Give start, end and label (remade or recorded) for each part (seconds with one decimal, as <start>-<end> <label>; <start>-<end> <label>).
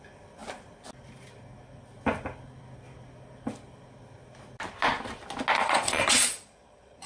0.0-5.6 recorded; 5.6-7.1 remade